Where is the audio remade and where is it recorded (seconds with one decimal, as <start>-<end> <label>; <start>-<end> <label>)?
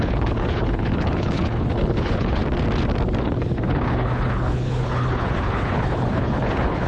0.0-2.4 remade; 2.4-3.2 recorded; 3.2-6.9 remade